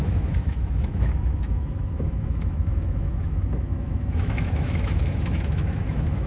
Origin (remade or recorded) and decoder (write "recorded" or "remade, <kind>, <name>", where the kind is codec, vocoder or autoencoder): remade, autoencoder, DAC-VAE